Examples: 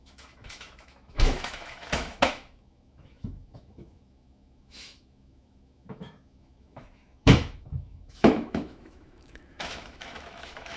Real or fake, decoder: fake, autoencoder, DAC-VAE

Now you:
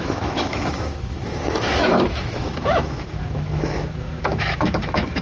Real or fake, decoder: fake, autoencoder, DAC-VAE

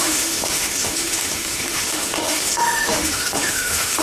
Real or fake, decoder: fake, autoencoder, DAC-VAE